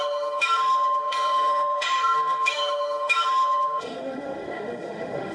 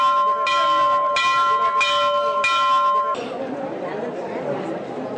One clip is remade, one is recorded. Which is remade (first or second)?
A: first